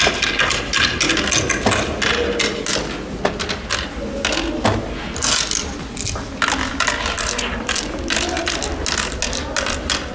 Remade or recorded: recorded